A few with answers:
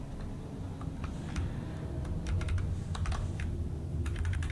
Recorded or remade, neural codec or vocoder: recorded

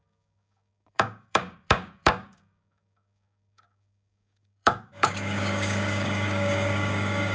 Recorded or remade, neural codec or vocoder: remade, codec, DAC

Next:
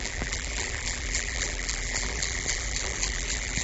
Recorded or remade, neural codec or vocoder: remade, vocoder, BigVGAN v2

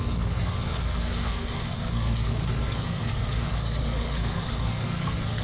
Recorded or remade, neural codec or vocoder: remade, codec, SNAC